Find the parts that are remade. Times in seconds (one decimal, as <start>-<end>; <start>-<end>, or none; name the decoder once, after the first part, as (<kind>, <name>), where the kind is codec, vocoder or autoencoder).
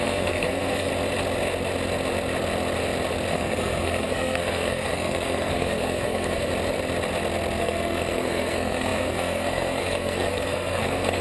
0.0-0.9 (codec, SNAC); 3.3-6.5; 7.6-11.2